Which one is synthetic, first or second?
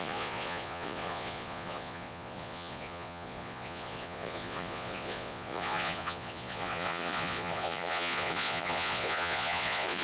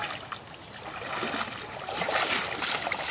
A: first